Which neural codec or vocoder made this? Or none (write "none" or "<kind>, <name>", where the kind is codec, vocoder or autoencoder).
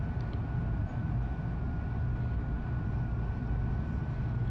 none